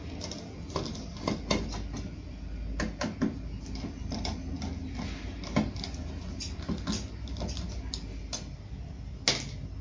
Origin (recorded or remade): recorded